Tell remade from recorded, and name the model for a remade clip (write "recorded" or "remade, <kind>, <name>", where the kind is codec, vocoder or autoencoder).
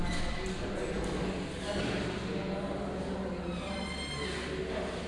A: recorded